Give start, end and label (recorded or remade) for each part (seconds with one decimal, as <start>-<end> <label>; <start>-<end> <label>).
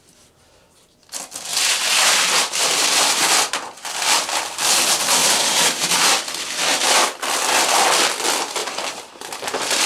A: 0.0-1.5 recorded; 1.5-3.3 remade; 3.3-5.2 recorded; 5.2-6.1 remade; 6.1-8.6 recorded; 8.6-9.9 remade